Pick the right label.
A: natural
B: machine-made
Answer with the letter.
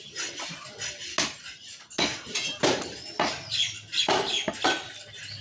A